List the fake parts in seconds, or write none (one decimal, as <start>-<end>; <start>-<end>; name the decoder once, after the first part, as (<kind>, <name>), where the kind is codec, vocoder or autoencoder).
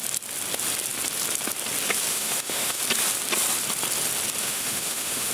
2.1-2.8 (autoencoder, DAC-VAE); 4.4-5.3